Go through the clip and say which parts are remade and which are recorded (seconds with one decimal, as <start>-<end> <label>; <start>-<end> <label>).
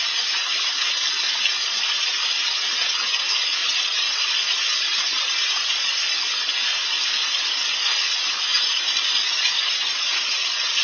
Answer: 0.0-3.6 recorded; 3.6-4.3 remade; 4.3-4.9 recorded; 4.9-5.9 remade; 5.9-8.5 recorded; 8.5-10.1 remade; 10.1-10.8 recorded